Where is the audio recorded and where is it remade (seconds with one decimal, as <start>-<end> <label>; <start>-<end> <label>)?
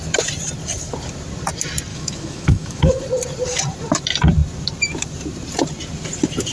0.0-1.9 recorded; 1.9-3.0 remade; 3.0-6.5 recorded